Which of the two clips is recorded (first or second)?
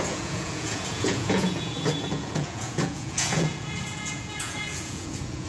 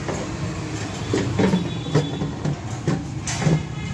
second